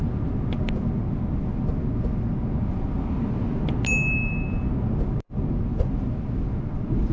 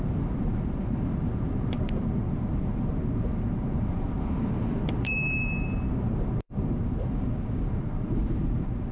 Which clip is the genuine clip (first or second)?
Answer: first